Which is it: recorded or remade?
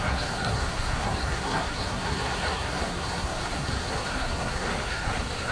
remade